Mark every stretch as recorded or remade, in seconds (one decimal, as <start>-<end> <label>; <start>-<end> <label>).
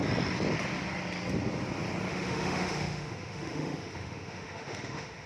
0.0-2.1 recorded; 2.1-5.3 remade